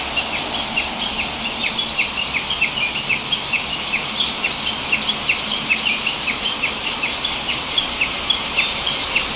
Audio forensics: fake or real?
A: real